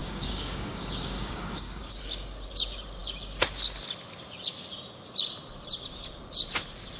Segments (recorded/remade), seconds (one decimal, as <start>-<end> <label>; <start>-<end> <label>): 0.0-1.8 remade; 1.8-7.0 recorded

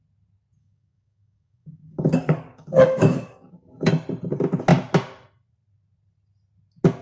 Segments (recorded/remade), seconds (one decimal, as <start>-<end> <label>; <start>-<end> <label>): 0.0-0.6 recorded; 0.6-3.9 remade; 3.9-7.0 recorded

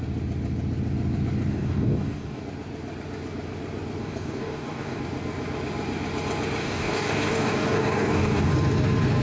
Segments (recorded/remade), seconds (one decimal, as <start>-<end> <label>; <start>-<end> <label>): 0.0-1.5 recorded; 1.5-2.4 remade; 2.4-4.0 recorded; 4.0-5.0 remade; 5.0-6.6 recorded; 6.6-8.5 remade; 8.5-9.2 recorded